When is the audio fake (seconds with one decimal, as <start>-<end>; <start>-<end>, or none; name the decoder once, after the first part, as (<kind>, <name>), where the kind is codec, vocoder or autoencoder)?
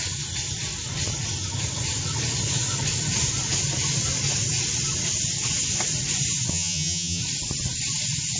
6.5-7.2 (vocoder, HiFi-GAN)